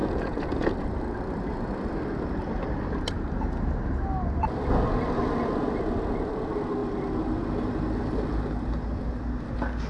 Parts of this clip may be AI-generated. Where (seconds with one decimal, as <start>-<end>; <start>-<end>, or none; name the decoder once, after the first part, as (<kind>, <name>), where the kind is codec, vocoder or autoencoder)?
0.0-0.7 (vocoder, Vocos)